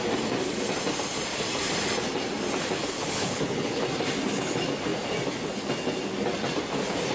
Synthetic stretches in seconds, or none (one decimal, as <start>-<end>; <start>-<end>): 3.0-3.8